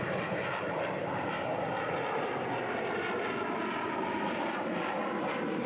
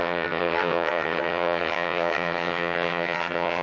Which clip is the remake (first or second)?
second